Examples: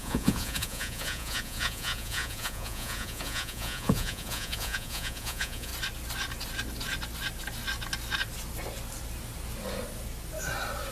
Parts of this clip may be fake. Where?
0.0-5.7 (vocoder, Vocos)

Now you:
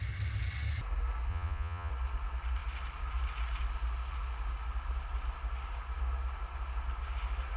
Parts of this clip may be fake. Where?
1.3-1.9 (vocoder, Vocos)

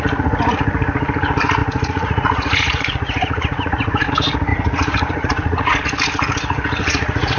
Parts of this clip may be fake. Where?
1.6-4.1 (vocoder, Vocos); 4.5-5.8; 6.8-7.4

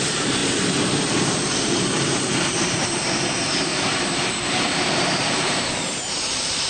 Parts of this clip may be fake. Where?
0.0-6.7 (vocoder, BigVGAN v2)

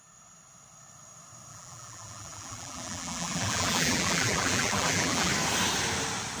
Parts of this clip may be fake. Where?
1.5-5.3 (vocoder, BigVGAN v2)

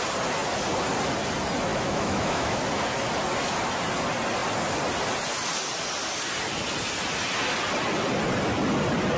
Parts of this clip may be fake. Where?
1.7-2.6 (autoencoder, DAC-VAE)

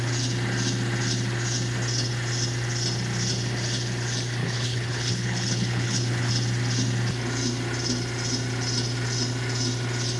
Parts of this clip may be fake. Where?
4.4-6.3 (codec, HILCodec)

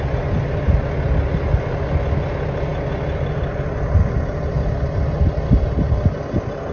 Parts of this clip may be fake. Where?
none